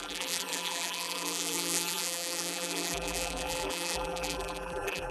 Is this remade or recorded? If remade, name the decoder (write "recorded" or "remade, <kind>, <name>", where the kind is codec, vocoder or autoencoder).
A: remade, vocoder, BigVGAN v2